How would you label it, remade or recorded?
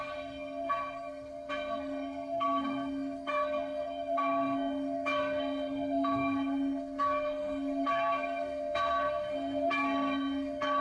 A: remade